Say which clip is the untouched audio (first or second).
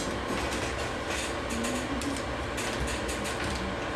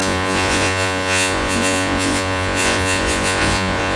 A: first